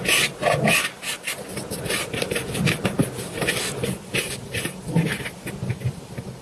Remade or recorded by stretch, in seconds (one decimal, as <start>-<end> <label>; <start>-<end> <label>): 0.0-6.4 recorded